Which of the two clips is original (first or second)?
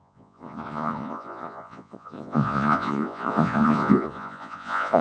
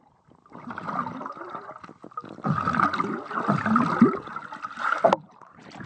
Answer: second